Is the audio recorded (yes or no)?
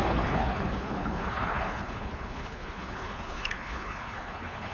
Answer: no